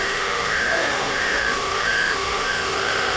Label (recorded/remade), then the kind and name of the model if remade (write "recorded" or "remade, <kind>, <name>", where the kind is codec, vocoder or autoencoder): remade, autoencoder, DAC-VAE